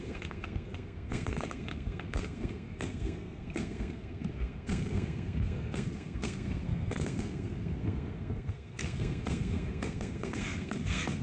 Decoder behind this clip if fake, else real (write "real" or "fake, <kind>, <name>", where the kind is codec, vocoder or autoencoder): fake, codec, SNAC